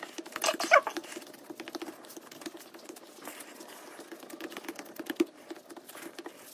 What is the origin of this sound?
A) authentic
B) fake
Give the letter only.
A